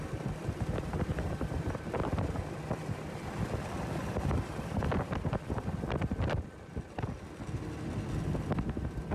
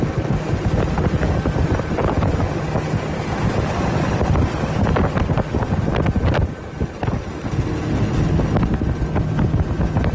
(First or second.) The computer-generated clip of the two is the first